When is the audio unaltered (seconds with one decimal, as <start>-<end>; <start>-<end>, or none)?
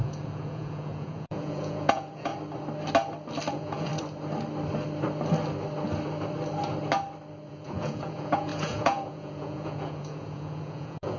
2.3-3.5; 3.9-7.5